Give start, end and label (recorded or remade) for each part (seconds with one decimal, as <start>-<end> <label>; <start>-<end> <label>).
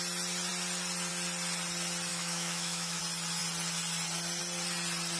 0.0-2.1 recorded; 2.1-3.0 remade; 3.0-5.2 recorded